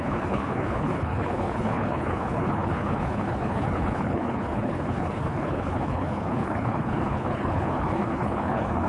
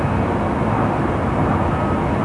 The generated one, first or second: first